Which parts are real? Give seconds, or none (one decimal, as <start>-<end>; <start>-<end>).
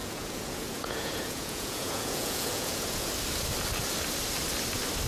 3.1-5.1